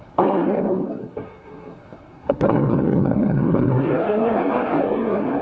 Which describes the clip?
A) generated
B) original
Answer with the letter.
A